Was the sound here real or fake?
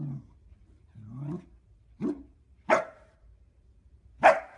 fake